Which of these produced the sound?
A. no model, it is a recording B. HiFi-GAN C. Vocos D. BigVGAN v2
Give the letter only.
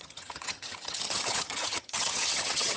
B